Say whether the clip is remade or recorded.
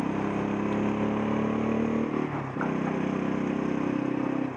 recorded